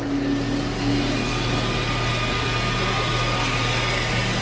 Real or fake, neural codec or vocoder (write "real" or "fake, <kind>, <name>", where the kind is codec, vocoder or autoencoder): real